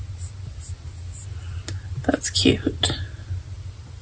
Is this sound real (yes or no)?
yes